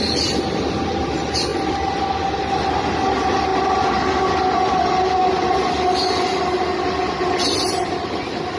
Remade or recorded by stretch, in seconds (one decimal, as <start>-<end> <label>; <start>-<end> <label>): 0.0-8.6 recorded